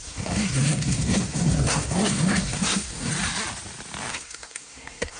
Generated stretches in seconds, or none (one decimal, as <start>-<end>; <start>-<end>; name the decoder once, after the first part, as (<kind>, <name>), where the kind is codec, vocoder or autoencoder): 0.0-3.1 (codec, SNAC); 4.1-5.2